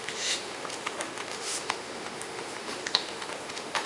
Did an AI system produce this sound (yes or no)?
yes